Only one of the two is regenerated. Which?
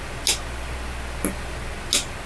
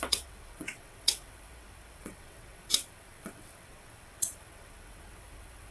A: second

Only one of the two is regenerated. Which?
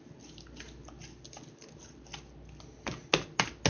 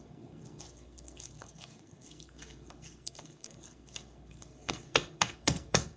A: second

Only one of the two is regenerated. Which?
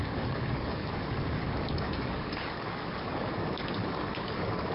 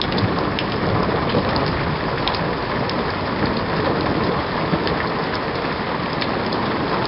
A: first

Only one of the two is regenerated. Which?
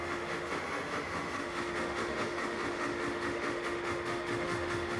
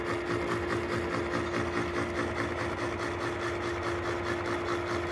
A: first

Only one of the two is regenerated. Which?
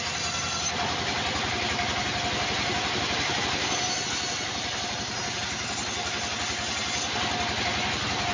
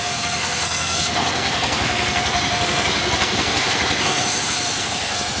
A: second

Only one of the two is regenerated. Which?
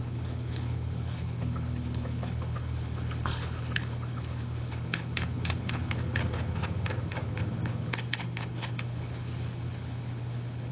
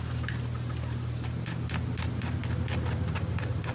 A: first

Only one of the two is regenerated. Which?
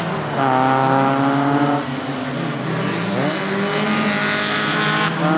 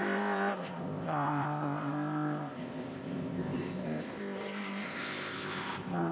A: second